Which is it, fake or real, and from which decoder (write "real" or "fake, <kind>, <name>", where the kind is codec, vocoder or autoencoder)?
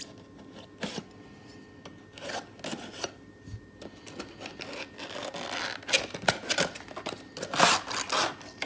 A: real